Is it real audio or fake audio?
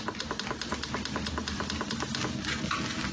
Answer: real